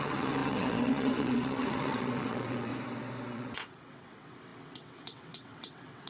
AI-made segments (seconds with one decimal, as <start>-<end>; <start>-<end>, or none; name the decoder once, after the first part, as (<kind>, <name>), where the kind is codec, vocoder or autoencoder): 0.0-2.7 (vocoder, WaveNeXt); 3.3-6.1